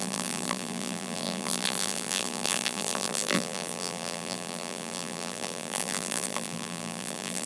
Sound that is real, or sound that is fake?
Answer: fake